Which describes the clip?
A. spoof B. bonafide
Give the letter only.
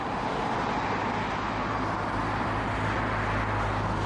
B